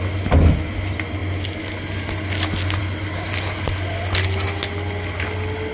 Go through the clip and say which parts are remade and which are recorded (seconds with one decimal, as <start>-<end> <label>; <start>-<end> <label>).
0.0-5.7 recorded